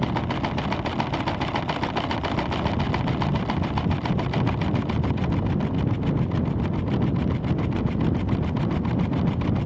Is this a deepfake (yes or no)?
no